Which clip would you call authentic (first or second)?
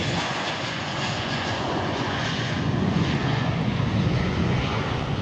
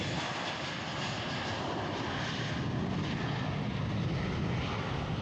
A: second